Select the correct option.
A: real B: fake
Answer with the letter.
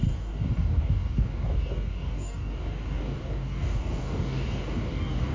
B